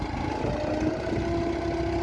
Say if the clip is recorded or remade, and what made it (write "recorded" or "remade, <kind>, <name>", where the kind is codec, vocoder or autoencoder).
recorded